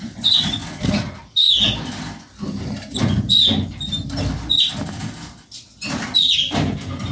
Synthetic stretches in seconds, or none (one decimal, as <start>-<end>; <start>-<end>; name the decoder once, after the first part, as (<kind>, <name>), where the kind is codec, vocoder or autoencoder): none